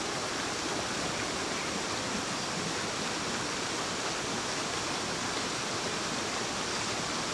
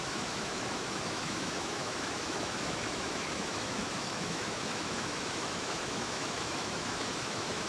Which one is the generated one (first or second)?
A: second